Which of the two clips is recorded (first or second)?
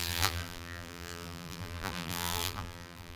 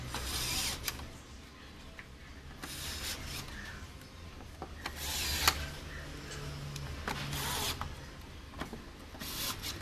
second